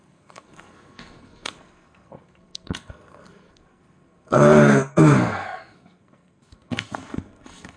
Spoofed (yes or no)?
yes